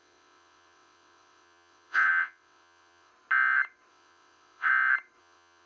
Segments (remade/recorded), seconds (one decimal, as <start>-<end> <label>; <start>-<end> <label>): 0.0-3.1 remade; 3.1-3.9 recorded; 3.9-4.7 remade; 4.7-5.2 recorded; 5.2-5.7 remade